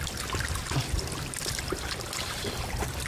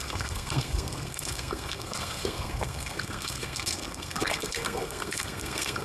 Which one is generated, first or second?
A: second